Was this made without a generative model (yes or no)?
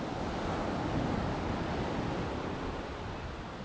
yes